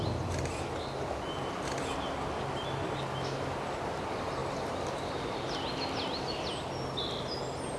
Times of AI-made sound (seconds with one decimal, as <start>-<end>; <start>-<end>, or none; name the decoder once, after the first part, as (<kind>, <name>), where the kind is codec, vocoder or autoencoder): none